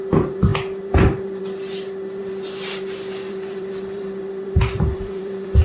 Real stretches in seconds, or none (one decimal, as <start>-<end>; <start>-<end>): 0.0-0.5; 1.4-2.2